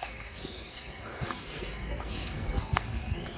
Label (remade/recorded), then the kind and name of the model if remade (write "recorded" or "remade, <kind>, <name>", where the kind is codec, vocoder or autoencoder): remade, codec, SNAC